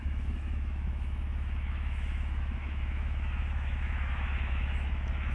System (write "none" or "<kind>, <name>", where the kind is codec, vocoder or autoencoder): autoencoder, DAC-VAE